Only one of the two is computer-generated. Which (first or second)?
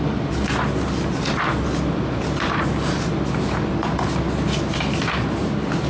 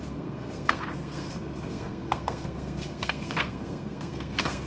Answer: second